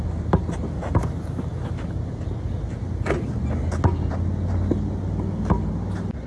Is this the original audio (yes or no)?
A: yes